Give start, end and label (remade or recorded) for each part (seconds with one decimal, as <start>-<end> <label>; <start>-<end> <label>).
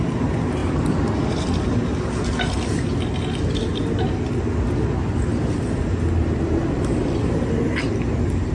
0.0-8.5 recorded